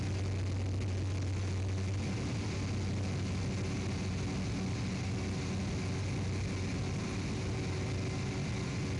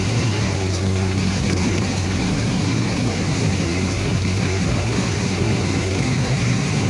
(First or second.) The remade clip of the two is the second